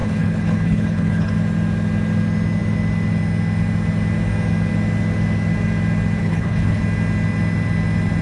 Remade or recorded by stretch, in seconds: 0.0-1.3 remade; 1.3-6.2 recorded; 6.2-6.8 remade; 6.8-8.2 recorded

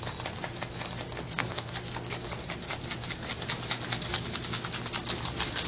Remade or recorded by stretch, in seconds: 0.0-1.2 recorded; 1.2-2.1 remade; 2.1-5.7 recorded

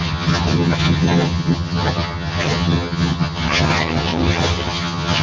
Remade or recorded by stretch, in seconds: 0.0-5.2 remade

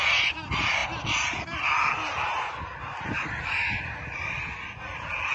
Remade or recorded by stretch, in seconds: 0.0-5.3 recorded

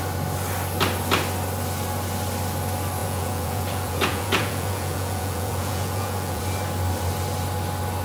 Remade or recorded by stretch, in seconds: 0.0-3.0 recorded; 3.0-6.4 remade; 6.4-8.0 recorded

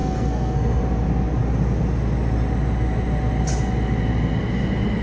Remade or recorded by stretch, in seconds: 0.0-0.8 remade; 0.8-5.0 recorded

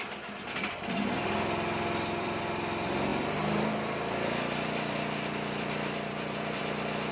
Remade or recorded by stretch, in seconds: 0.0-2.4 remade; 2.4-3.1 recorded; 3.1-6.6 remade; 6.6-7.1 recorded

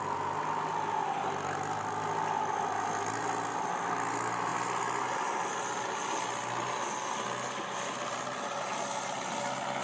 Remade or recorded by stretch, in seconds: 0.0-9.8 recorded